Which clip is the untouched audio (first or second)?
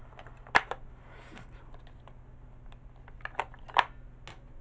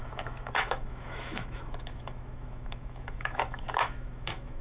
first